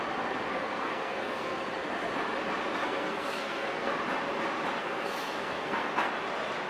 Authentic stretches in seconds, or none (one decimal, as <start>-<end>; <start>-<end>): 0.0-0.5; 1.6-2.8; 3.9-4.8; 6.1-6.7